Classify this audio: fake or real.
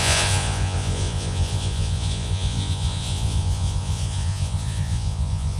fake